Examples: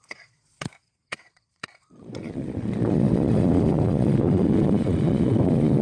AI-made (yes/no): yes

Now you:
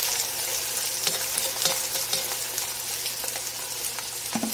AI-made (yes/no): no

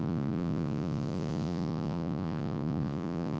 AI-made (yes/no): yes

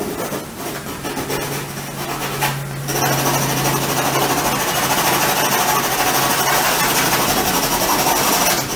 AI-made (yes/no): no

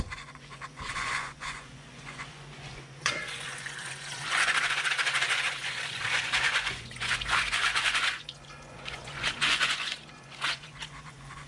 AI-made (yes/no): yes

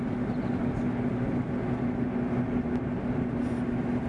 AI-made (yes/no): no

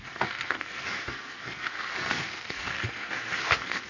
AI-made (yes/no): yes